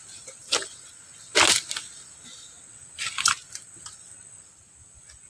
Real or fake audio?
real